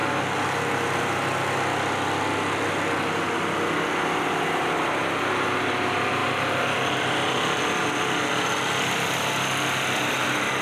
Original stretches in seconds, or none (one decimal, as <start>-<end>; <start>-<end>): 0.0-10.6